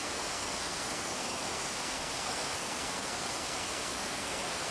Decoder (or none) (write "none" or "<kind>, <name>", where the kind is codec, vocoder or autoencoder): codec, SNAC